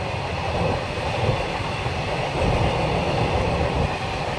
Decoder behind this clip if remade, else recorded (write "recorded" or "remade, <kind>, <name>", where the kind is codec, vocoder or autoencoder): recorded